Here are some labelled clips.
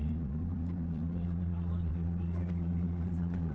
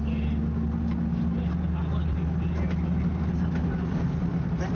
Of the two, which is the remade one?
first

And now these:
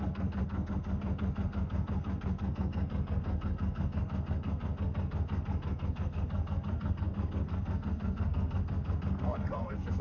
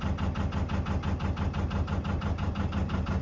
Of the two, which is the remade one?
first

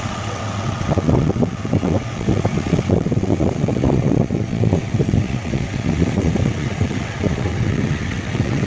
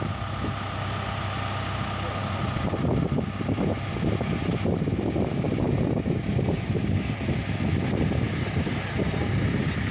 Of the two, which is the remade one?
first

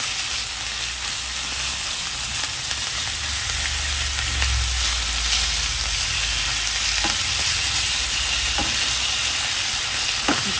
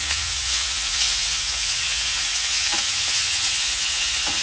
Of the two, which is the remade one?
second